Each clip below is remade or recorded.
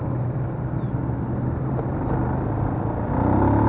recorded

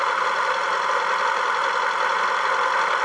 recorded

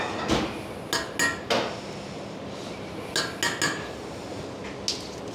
recorded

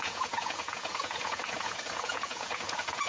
remade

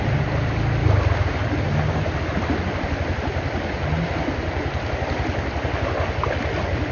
recorded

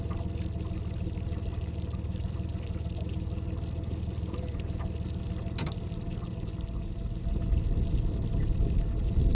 recorded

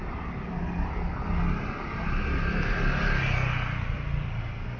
recorded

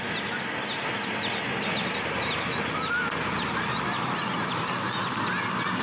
recorded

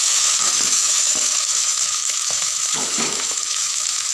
remade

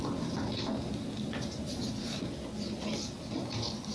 recorded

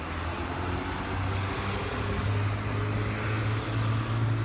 recorded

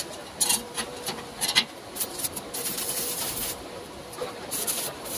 remade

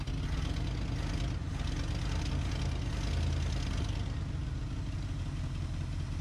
recorded